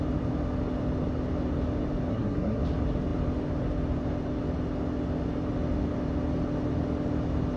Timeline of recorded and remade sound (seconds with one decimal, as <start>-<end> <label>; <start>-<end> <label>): 0.0-2.1 recorded; 2.1-2.6 remade; 2.6-7.6 recorded